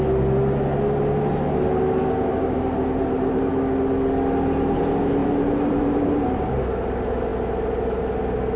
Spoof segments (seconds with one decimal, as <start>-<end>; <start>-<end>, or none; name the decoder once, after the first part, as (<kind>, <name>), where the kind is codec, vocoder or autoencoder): 2.3-3.5 (vocoder, BigVGAN v2); 5.2-6.5